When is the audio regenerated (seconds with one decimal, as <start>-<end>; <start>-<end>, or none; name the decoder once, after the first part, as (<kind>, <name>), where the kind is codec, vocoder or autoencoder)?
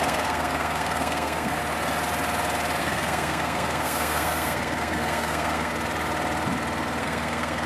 0.0-1.6 (codec, SNAC); 2.8-5.7; 7.0-7.7